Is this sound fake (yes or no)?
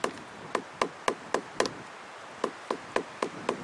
no